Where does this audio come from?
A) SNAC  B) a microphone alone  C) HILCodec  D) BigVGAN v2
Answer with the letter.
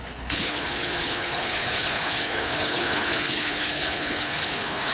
C